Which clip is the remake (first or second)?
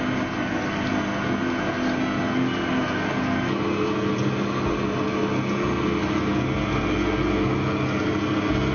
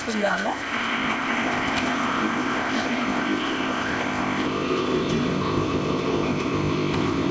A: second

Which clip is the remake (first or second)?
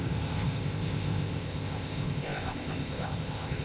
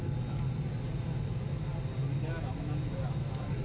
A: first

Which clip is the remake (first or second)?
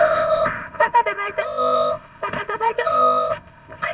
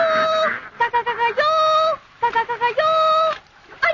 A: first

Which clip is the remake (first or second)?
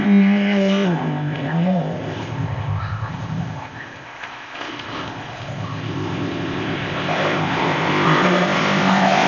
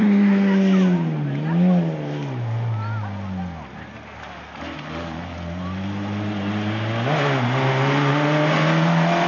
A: first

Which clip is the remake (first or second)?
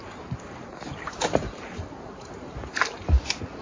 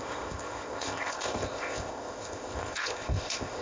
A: second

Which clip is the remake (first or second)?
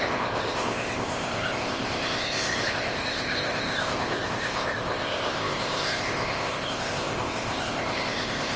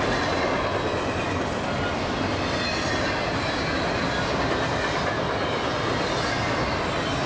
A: first